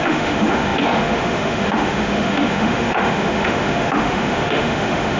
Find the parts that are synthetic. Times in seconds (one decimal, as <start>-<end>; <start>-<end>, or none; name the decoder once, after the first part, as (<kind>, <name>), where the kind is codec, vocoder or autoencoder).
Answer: 0.0-5.2 (autoencoder, DAC-VAE)